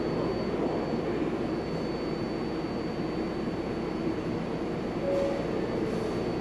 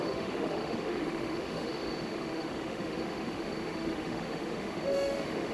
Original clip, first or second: first